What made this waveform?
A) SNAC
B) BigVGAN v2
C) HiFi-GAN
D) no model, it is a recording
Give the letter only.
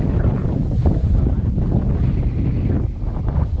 D